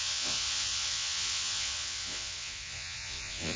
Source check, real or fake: fake